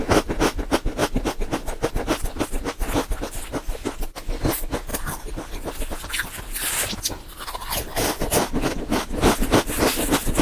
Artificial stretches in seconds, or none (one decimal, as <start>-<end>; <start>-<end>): 1.0-1.9; 7.9-9.7